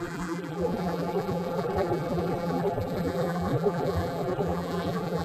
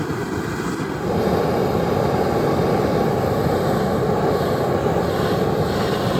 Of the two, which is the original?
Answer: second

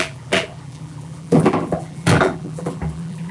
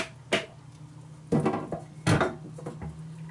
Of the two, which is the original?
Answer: second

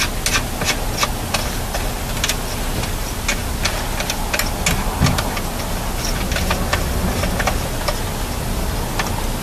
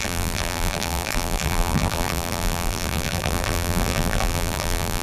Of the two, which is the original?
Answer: first